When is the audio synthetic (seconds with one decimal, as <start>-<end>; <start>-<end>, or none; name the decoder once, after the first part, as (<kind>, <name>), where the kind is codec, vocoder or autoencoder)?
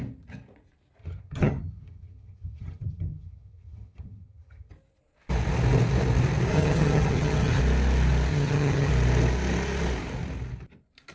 1.0-4.7 (vocoder, HiFi-GAN); 6.5-7.6; 8.3-8.9